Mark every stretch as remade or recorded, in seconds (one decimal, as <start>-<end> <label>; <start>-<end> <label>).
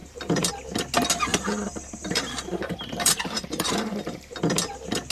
0.0-0.5 remade; 0.5-1.3 recorded; 1.3-4.4 remade; 4.4-5.1 recorded